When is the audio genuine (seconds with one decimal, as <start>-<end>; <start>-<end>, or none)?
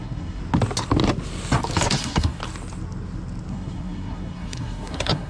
0.4-2.0; 2.4-3.5